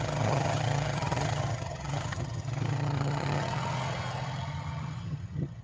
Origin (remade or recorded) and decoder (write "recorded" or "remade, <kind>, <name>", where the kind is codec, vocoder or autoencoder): remade, vocoder, HiFi-GAN